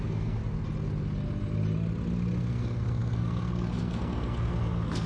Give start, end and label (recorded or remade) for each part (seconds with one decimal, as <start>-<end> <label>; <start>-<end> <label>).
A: 0.0-0.4 remade; 0.4-2.4 recorded; 2.4-5.1 remade